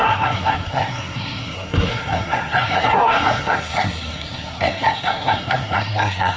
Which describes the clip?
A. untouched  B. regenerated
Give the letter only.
B